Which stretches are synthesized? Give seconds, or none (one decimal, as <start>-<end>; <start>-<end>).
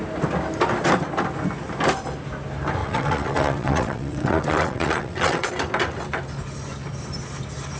2.8-5.5